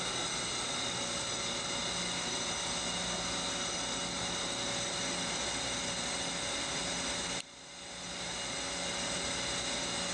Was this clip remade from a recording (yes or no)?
no